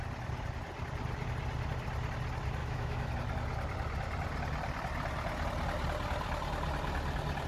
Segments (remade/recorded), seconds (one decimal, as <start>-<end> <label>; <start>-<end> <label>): 0.0-2.6 recorded; 2.6-3.1 remade; 3.1-7.5 recorded